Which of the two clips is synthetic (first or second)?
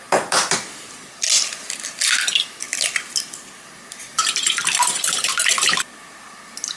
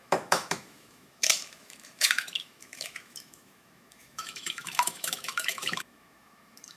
second